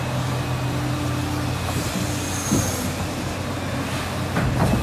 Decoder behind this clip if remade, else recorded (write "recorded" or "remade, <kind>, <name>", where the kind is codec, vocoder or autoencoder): recorded